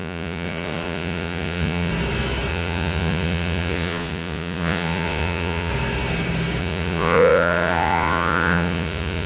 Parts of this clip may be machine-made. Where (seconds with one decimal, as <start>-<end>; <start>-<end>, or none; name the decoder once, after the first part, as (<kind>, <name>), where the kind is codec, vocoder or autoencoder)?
0.0-1.9 (vocoder, Vocos); 2.5-5.7; 6.6-9.3